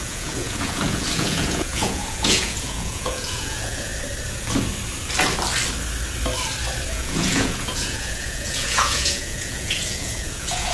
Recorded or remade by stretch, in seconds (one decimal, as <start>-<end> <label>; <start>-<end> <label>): 0.0-3.9 remade; 3.9-6.9 recorded; 6.9-10.7 remade